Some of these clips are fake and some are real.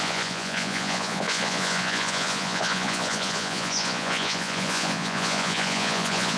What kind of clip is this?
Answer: fake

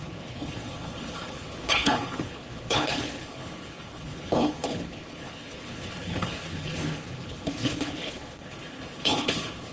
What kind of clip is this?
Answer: fake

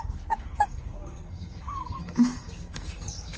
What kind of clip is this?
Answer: fake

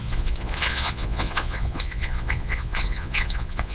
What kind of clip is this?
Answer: fake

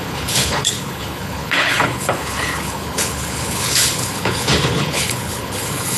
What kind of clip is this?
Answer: fake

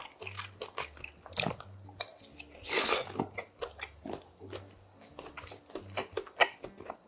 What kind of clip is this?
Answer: real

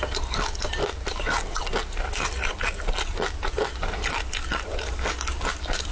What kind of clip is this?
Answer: real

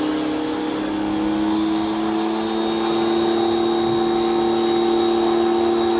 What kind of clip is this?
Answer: real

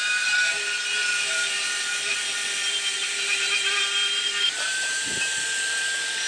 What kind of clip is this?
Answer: fake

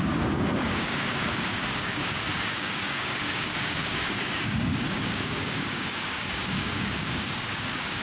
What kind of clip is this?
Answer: fake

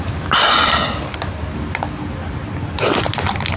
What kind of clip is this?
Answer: real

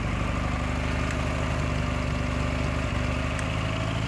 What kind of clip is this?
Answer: real